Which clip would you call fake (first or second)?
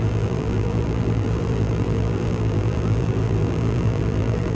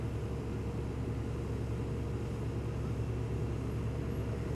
first